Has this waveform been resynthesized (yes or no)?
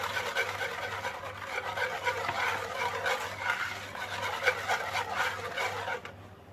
no